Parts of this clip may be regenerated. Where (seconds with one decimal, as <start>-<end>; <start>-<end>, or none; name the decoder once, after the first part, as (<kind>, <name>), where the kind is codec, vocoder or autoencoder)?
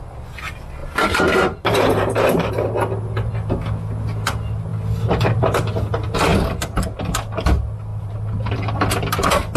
0.8-2.5 (vocoder, BigVGAN v2); 7.9-8.8